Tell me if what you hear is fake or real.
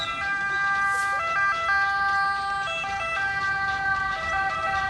fake